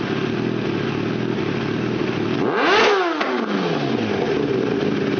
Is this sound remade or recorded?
recorded